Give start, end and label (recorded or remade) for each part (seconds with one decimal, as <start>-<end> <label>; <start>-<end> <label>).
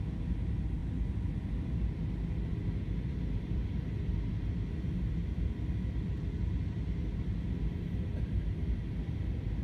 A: 0.0-9.6 recorded